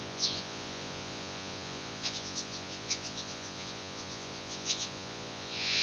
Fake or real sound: fake